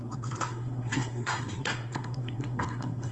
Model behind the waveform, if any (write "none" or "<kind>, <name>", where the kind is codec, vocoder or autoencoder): codec, SNAC